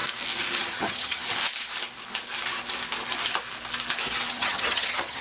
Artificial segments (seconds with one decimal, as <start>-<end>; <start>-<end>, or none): 0.6-1.2; 4.3-5.2